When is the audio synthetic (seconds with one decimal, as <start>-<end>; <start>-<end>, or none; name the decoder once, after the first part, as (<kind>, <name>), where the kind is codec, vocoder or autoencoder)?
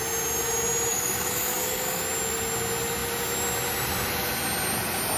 0.9-2.0 (codec, DAC)